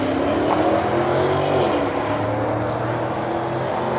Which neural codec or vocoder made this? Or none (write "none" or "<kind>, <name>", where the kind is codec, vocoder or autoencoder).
none